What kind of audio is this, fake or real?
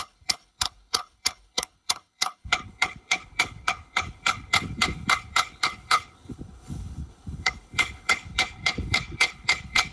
fake